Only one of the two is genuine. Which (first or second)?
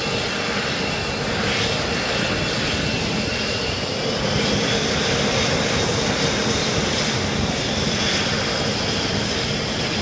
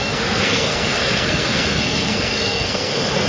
first